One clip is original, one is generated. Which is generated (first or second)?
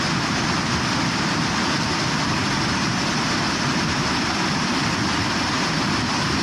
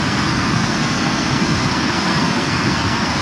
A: second